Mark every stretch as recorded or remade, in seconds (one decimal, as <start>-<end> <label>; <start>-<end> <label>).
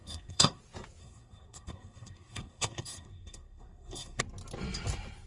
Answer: 0.0-0.6 remade; 0.6-1.0 recorded; 1.0-4.2 remade; 4.2-5.3 recorded